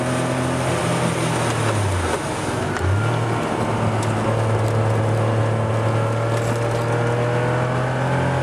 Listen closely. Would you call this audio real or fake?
real